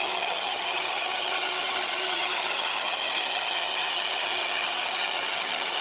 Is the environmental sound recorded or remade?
remade